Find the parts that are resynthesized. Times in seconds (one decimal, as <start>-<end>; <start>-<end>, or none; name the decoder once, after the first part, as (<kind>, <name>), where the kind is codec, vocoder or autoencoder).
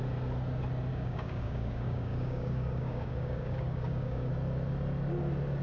0.9-4.3 (codec, DAC)